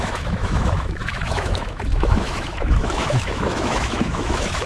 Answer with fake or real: fake